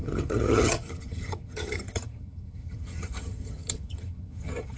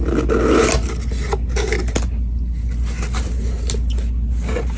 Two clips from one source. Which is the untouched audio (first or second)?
second